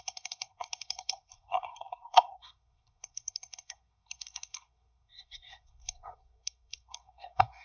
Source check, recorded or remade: remade